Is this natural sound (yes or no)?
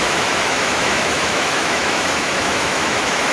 no